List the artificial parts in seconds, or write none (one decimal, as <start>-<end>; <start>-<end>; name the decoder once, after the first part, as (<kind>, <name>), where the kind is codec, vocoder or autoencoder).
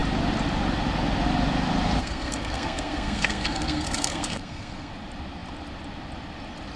2.0-4.9 (codec, SNAC)